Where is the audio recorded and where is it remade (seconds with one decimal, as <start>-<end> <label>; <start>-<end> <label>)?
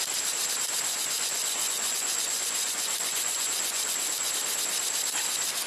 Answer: 0.0-0.9 recorded; 0.9-4.3 remade; 4.3-5.7 recorded